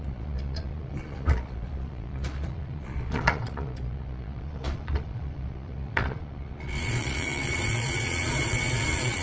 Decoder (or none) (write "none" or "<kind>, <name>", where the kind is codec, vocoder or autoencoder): vocoder, Vocos